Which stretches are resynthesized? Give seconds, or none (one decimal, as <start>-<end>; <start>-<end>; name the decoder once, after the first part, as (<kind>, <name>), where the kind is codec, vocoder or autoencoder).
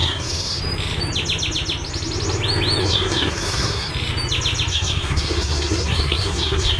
0.0-0.6 (codec, SNAC); 2.8-3.9; 4.7-6.8